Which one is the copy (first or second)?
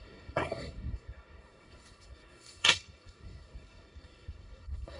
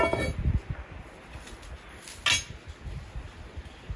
first